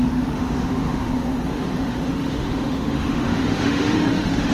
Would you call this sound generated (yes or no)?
yes